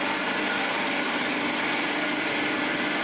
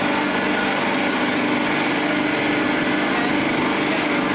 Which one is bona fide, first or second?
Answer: second